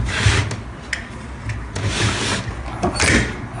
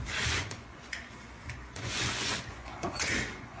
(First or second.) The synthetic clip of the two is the second